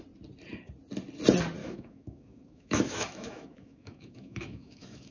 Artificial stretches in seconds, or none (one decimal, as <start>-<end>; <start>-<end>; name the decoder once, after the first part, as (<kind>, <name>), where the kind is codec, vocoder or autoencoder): 1.6-5.1 (autoencoder, DAC-VAE)